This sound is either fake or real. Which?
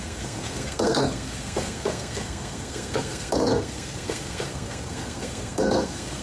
fake